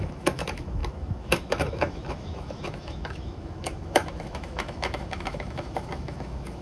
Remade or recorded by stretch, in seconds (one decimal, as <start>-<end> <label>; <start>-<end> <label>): 0.0-6.6 remade

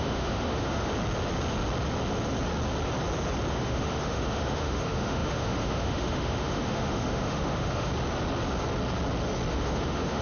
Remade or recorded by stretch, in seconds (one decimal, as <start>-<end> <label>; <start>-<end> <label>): 0.0-0.9 remade; 0.9-3.5 recorded; 3.5-7.9 remade; 7.9-9.5 recorded; 9.5-10.2 remade

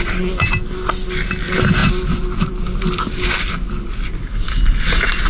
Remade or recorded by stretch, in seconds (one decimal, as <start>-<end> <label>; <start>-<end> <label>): 0.0-5.3 recorded

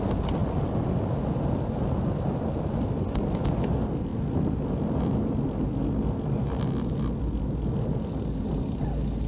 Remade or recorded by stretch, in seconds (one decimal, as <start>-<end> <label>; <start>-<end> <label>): 0.0-9.3 recorded